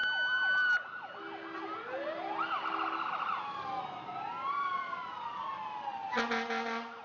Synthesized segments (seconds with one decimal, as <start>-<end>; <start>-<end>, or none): none